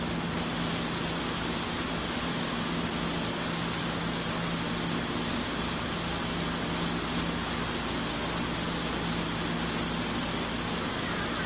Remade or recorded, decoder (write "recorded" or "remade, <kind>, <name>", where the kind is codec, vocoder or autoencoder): recorded